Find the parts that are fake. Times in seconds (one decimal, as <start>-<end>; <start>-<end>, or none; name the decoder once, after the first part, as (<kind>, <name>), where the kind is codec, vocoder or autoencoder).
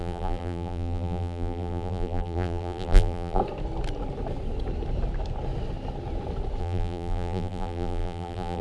0.0-3.4 (vocoder, BigVGAN v2); 6.6-8.6